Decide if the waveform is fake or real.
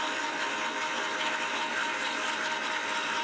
real